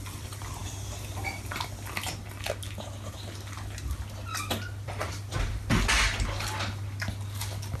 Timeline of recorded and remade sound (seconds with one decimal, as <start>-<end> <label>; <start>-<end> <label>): 0.0-7.8 recorded